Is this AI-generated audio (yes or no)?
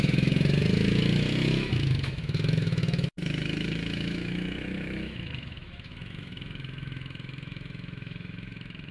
yes